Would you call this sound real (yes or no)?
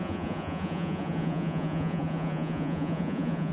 no